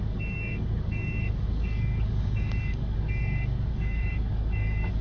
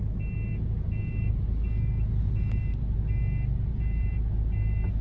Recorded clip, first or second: second